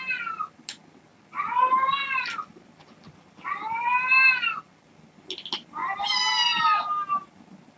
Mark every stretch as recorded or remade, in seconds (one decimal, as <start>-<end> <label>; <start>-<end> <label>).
0.0-7.8 recorded